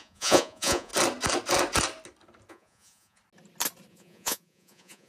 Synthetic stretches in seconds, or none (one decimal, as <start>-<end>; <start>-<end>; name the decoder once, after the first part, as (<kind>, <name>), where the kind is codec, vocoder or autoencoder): 0.0-0.9 (vocoder, Vocos); 2.5-3.2; 3.9-5.1